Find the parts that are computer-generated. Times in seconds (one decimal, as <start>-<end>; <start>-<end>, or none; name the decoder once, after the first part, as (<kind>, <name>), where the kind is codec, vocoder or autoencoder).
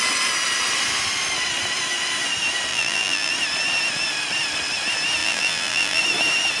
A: 2.7-3.3 (vocoder, BigVGAN v2); 5.2-6.0